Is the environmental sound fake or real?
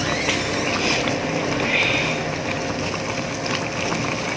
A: real